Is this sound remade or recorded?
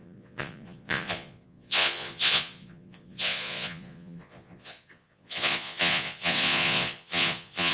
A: remade